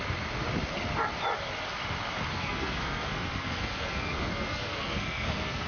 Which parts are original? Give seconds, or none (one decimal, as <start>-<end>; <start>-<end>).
0.0-2.3